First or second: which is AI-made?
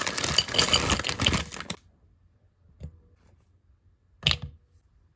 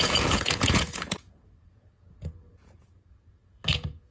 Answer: second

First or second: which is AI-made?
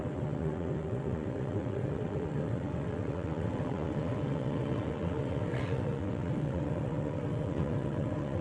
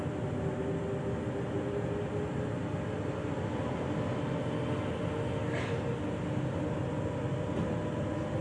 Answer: first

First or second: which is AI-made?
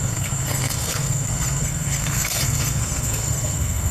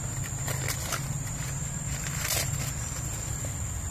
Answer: first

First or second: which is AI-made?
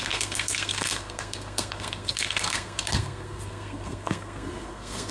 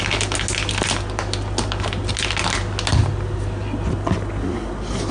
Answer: first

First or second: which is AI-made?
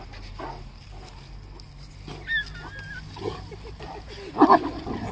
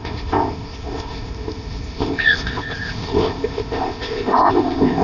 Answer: second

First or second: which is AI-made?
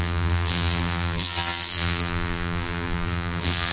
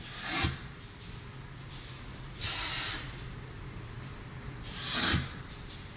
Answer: first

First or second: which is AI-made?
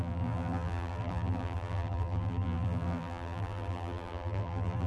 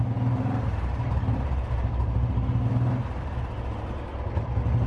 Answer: first